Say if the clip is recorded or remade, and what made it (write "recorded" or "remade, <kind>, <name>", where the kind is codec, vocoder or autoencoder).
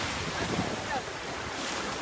remade, vocoder, BigVGAN v2